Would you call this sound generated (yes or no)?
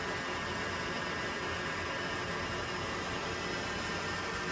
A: no